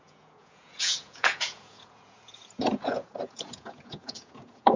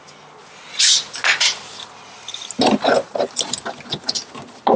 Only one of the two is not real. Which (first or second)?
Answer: first